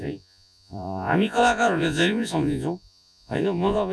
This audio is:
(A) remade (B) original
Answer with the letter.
A